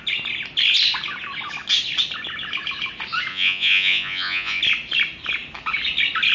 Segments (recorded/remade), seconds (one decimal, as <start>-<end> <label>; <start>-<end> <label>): 0.0-3.3 recorded; 3.3-4.6 remade; 4.6-6.3 recorded